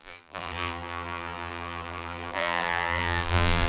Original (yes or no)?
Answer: no